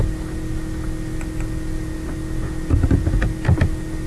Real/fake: real